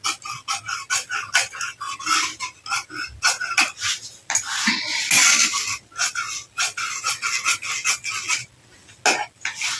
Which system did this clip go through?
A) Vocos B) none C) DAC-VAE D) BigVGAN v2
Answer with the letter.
B